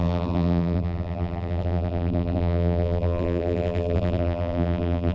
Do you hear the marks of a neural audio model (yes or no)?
yes